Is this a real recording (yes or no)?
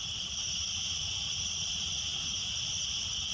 yes